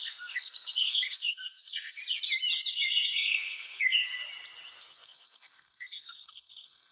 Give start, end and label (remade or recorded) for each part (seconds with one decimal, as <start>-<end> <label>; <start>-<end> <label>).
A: 0.0-2.0 remade; 2.0-2.7 recorded; 2.7-4.2 remade; 4.2-4.8 recorded; 4.8-6.9 remade